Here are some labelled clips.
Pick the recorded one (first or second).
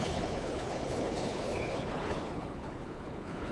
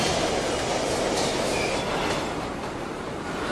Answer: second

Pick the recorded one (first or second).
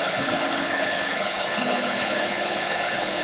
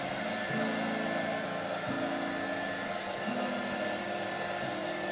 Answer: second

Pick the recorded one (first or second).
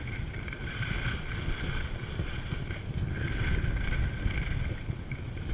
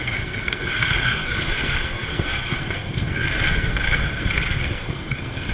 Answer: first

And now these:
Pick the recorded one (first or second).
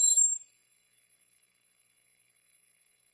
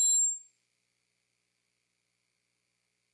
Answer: second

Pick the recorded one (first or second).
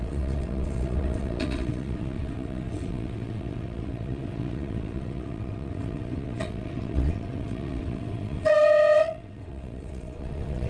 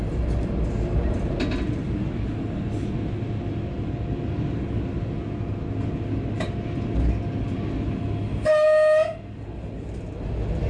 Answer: second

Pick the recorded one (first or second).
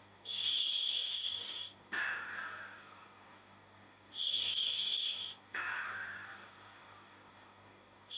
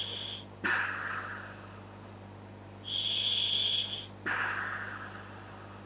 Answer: second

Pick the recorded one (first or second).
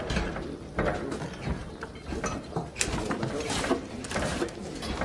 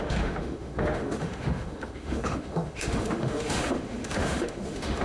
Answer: first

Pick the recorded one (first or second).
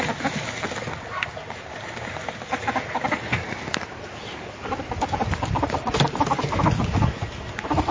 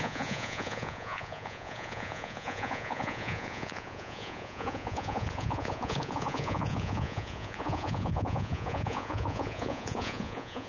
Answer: first